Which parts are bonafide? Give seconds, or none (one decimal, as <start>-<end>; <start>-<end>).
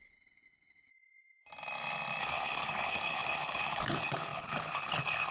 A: 0.9-2.2